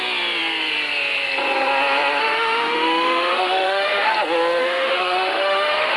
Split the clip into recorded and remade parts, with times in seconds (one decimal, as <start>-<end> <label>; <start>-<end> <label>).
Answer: 0.0-2.2 recorded; 2.2-4.1 remade; 4.1-4.6 recorded; 4.6-6.0 remade